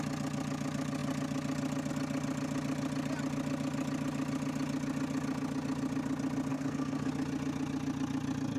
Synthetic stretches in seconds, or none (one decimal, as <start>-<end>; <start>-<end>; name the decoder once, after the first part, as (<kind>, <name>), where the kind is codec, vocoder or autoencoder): 6.5-7.1 (codec, SNAC)